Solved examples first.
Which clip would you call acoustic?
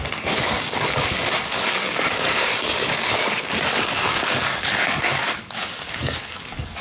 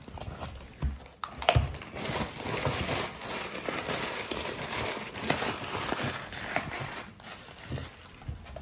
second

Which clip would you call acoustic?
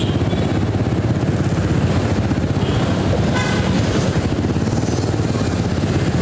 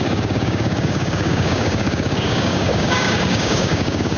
first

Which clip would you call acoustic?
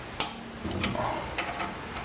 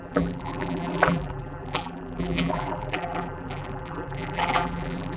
first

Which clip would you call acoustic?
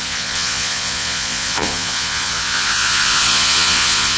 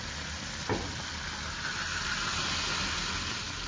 second